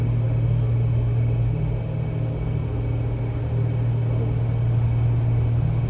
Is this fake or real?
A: real